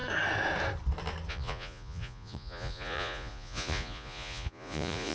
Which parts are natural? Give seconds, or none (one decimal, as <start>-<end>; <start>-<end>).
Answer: 0.0-1.3